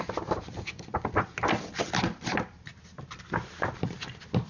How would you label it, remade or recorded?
recorded